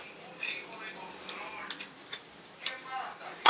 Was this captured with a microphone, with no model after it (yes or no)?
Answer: yes